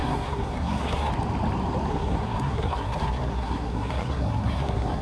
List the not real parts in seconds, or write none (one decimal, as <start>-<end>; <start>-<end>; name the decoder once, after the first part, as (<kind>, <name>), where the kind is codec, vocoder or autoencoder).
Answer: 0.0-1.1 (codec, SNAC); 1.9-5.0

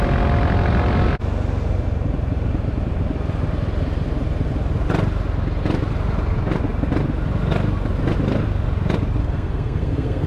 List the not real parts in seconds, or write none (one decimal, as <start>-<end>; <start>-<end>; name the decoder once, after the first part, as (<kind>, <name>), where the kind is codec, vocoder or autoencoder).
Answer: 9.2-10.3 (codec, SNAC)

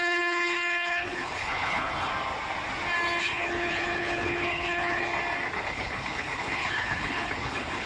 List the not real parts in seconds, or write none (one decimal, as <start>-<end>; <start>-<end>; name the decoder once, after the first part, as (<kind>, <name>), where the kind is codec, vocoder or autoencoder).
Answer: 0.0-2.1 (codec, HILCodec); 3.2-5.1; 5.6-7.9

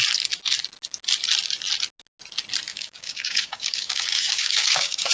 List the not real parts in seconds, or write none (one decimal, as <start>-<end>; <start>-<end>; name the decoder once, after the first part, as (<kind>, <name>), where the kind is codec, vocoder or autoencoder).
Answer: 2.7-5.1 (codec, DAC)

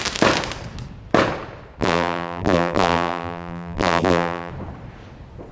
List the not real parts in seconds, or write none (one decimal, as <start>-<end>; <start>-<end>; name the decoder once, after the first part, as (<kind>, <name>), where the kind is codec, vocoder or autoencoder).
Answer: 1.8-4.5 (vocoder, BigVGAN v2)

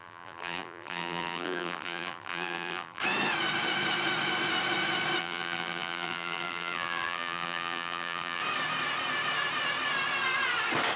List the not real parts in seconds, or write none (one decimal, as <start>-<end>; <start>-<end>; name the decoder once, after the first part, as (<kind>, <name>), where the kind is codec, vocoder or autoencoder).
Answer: 0.0-3.0 (vocoder, BigVGAN v2); 5.2-8.4